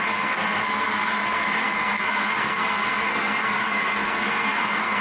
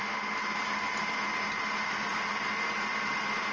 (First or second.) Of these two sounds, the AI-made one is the first